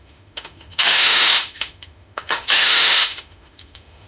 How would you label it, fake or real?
fake